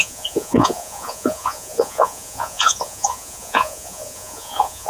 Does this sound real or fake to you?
fake